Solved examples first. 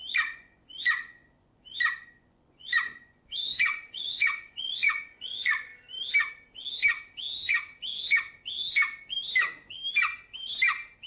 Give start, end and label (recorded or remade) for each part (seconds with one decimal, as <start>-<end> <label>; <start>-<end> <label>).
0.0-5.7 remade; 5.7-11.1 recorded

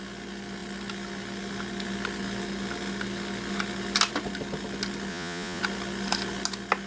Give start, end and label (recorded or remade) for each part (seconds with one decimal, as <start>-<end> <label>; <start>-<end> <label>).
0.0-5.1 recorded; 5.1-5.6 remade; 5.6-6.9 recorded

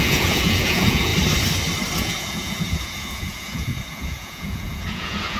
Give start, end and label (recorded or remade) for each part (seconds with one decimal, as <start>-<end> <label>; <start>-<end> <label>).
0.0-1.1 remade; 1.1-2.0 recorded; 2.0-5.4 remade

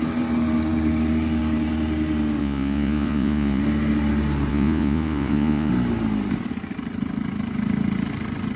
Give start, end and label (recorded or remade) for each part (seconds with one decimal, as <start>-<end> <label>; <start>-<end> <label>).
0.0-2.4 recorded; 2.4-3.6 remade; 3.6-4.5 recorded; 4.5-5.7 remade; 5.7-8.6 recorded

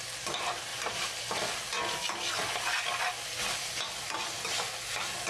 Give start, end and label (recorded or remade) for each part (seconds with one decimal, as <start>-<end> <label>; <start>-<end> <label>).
0.0-5.3 recorded

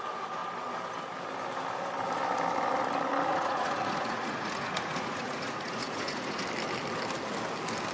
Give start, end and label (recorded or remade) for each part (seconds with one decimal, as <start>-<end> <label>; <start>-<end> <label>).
0.0-3.3 recorded; 3.3-6.4 remade; 6.4-7.9 recorded

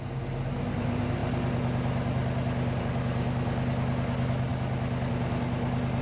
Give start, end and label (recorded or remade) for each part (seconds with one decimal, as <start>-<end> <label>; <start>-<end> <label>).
0.0-6.0 recorded